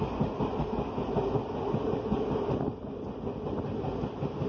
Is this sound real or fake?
real